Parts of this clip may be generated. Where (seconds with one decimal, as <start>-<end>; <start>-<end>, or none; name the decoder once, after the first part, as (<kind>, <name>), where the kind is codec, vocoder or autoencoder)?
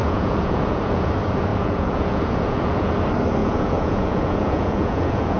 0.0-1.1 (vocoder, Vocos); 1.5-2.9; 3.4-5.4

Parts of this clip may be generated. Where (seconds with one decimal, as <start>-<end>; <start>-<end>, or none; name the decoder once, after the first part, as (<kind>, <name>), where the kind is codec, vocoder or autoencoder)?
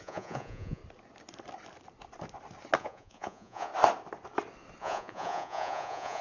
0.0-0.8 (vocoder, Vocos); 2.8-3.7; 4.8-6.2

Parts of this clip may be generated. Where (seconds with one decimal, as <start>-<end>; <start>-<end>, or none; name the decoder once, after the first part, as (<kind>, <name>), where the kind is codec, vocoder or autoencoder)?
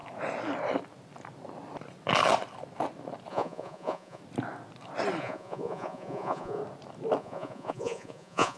3.3-4.2 (vocoder, Vocos); 5.2-6.6; 7.2-8.6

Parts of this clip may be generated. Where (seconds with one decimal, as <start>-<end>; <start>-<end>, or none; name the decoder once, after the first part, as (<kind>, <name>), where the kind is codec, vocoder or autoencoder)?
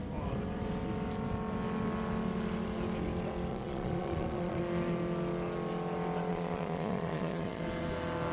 3.5-4.6 (vocoder, Vocos); 6.3-7.6